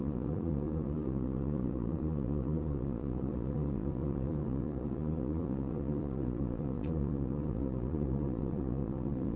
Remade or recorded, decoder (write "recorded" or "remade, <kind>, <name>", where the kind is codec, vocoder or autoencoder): remade, vocoder, Vocos